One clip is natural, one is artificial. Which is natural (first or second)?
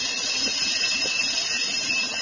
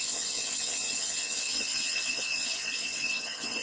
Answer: first